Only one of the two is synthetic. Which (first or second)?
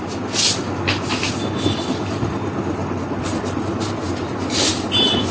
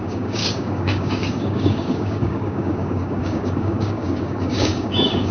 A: second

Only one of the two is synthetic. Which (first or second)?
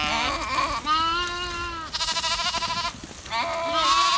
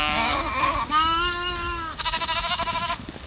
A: second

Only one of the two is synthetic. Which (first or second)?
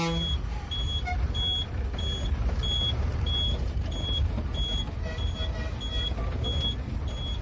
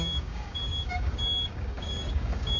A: second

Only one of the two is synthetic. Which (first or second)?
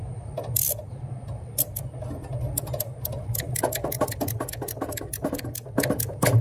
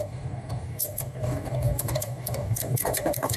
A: second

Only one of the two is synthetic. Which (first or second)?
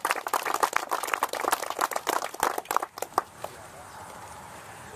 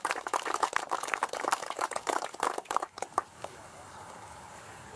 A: second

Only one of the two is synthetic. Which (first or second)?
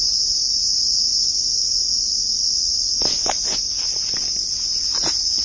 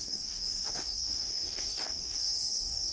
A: second